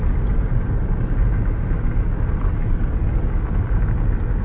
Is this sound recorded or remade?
recorded